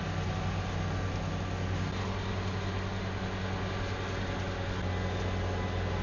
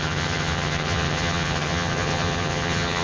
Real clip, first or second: first